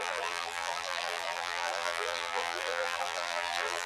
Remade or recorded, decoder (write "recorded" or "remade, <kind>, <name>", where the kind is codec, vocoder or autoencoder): remade, vocoder, BigVGAN v2